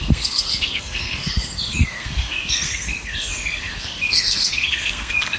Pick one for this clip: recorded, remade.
remade